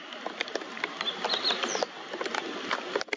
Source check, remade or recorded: recorded